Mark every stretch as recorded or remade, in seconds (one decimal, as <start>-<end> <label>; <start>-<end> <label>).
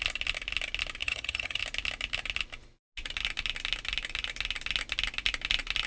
0.0-1.0 recorded; 1.0-1.6 remade; 1.6-5.9 recorded